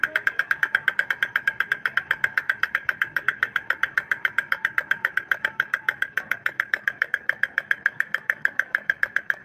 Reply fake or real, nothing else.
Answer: fake